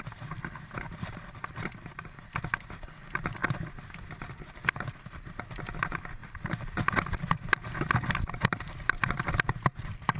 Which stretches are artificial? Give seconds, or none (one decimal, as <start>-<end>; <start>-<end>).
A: none